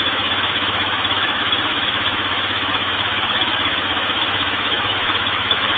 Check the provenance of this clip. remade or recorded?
remade